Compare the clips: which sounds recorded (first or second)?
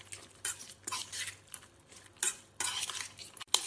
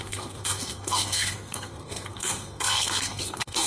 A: first